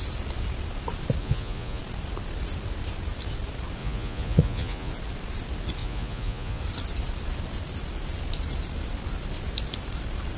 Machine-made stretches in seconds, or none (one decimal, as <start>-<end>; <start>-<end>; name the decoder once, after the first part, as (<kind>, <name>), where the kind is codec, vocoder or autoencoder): 1.2-1.8 (vocoder, Vocos); 3.8-4.9; 5.8-6.6